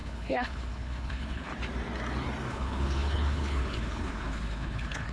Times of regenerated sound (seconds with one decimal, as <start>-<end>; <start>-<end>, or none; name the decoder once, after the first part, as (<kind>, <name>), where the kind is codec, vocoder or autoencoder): 0.0-1.5 (codec, HILCodec); 2.5-5.1